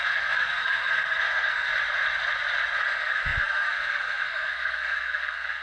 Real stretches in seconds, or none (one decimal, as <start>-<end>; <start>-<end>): 1.7-2.8